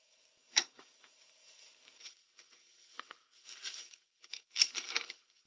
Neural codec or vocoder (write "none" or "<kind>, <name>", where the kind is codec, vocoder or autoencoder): codec, DAC